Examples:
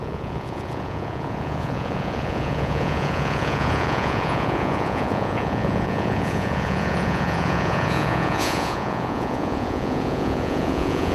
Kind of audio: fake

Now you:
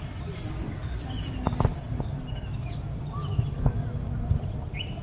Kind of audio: real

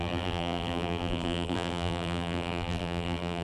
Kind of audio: fake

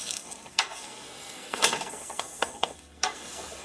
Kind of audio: fake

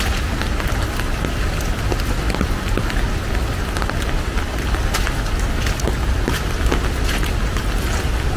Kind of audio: real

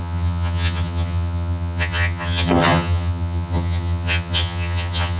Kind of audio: fake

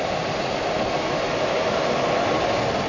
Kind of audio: real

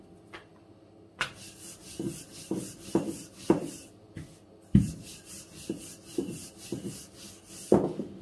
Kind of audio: real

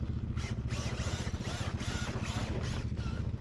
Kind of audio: real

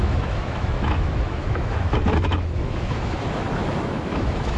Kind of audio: fake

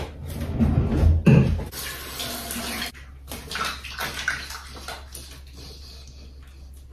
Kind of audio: real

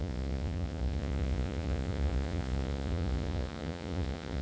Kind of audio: fake